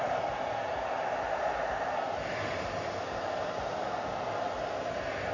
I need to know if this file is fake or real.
real